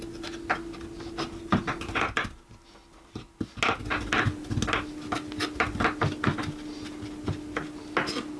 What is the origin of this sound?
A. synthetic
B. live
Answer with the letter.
B